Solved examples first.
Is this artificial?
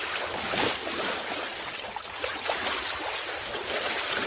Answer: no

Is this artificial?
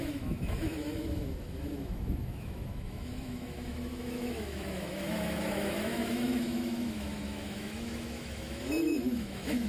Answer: yes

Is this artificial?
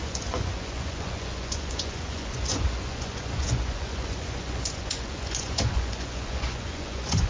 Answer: yes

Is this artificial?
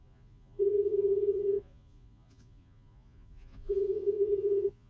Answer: yes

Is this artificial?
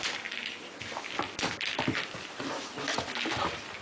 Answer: no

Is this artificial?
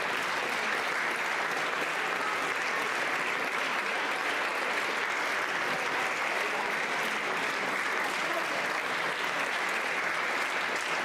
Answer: no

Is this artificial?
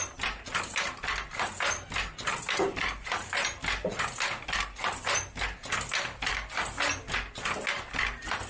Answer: no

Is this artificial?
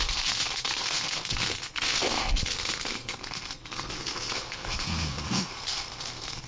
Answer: yes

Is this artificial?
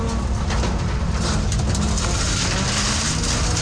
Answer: no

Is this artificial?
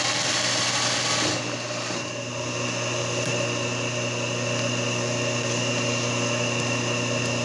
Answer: no